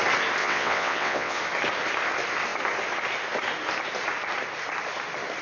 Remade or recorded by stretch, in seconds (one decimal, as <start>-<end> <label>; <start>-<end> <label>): 0.0-0.4 recorded; 0.4-1.4 remade; 1.4-5.4 recorded